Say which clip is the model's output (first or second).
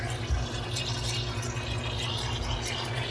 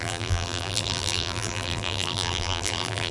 second